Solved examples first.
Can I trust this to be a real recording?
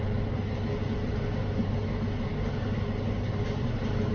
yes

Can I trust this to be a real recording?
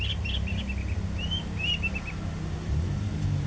yes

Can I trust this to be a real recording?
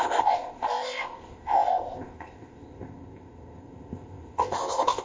no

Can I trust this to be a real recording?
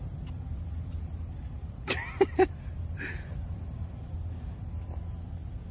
no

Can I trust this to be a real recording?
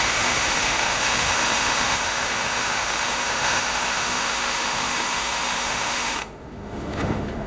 no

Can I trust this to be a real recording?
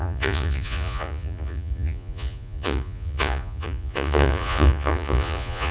no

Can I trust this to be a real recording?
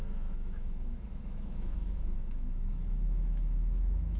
no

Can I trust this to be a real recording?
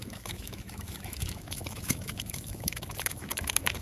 no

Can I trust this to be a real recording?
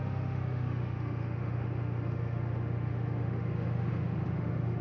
no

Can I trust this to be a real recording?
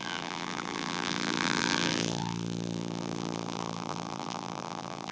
no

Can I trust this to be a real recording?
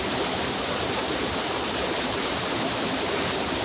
no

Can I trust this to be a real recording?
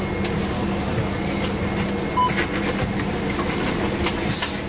yes